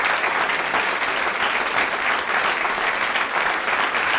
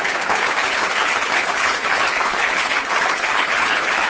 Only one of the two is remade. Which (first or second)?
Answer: second